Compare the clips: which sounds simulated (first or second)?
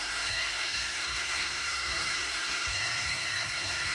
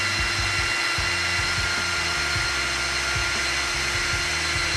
first